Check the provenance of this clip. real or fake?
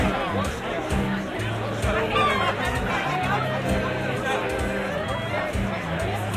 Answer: real